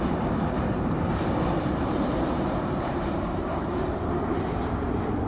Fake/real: fake